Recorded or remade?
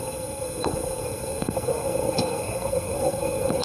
remade